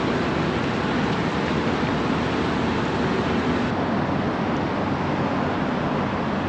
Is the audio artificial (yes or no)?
no